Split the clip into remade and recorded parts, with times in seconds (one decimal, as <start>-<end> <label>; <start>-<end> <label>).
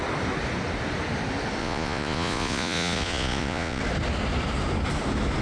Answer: 0.0-1.6 recorded; 1.6-3.8 remade; 3.8-5.4 recorded